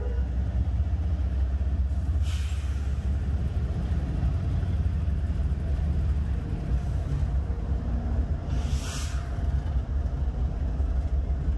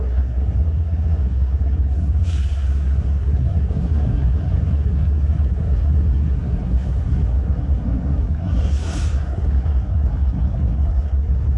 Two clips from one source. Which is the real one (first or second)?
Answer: first